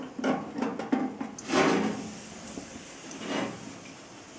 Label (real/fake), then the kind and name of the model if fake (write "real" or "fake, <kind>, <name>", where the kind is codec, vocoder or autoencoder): real